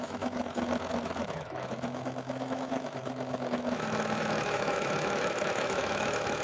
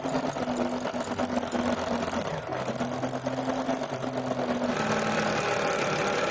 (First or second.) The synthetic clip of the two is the first